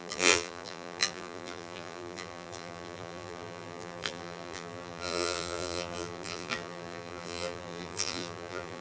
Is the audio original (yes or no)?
no